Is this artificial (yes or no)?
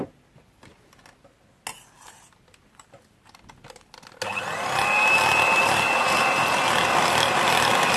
no